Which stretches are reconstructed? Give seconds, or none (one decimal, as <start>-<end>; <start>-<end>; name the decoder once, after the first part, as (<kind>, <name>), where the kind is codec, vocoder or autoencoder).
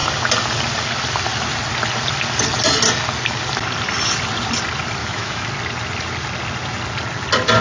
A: 5.0-5.5 (autoencoder, DAC-VAE)